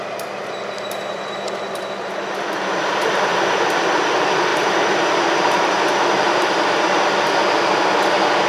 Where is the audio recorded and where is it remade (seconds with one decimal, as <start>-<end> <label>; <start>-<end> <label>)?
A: 0.0-4.5 recorded; 4.5-6.6 remade; 6.6-8.5 recorded